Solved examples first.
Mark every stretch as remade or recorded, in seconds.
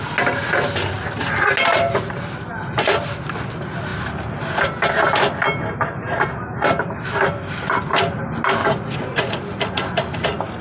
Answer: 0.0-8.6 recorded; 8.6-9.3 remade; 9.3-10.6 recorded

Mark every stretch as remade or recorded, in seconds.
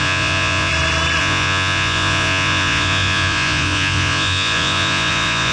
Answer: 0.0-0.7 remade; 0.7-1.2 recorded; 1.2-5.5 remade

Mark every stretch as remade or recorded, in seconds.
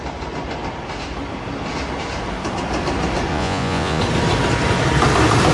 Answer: 0.0-3.3 recorded; 3.3-4.0 remade; 4.0-5.5 recorded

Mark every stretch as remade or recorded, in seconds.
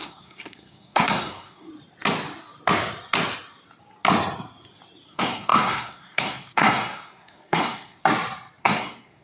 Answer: 0.0-1.7 remade; 1.7-5.1 recorded; 5.1-8.0 remade; 8.0-8.6 recorded; 8.6-9.2 remade